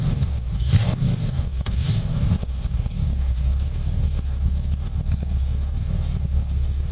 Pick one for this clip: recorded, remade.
remade